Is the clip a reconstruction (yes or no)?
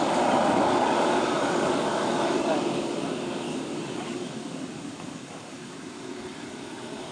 yes